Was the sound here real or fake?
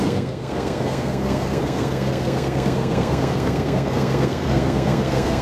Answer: fake